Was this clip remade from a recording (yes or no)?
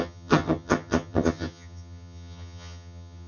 yes